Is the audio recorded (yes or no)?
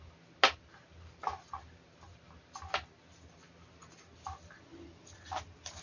yes